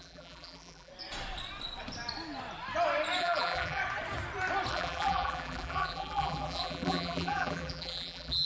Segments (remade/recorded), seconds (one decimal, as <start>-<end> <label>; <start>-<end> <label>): 0.0-0.9 remade; 0.9-3.2 recorded; 3.2-3.8 remade; 3.8-4.7 recorded; 4.7-8.4 remade